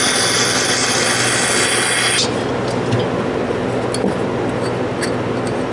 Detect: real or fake real